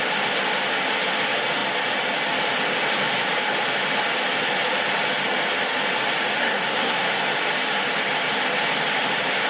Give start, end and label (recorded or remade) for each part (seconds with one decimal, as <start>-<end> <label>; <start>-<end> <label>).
0.0-6.4 recorded; 6.4-7.2 remade; 7.2-9.5 recorded